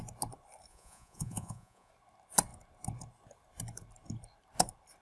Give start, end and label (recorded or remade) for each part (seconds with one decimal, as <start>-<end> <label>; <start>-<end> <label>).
0.0-0.7 recorded; 0.7-1.9 remade; 1.9-5.0 recorded